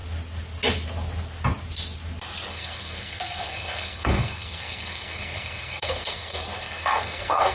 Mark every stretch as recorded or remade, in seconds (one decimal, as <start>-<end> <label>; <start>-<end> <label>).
0.0-2.5 recorded; 2.5-7.5 remade